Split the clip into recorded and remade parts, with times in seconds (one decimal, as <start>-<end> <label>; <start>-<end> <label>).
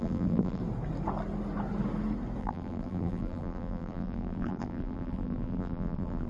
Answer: 0.0-0.6 remade; 0.6-2.4 recorded; 2.4-6.3 remade